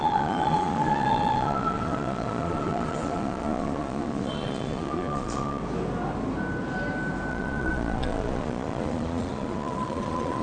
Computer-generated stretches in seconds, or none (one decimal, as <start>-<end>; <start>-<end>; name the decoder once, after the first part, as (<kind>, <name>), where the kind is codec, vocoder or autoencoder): 0.0-5.6 (vocoder, Vocos); 7.3-10.4